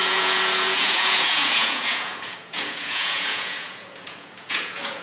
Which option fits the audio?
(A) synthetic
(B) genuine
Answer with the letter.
A